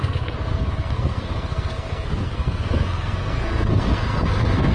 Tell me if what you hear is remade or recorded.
remade